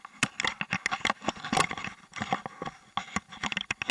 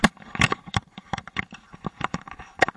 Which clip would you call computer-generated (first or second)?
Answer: second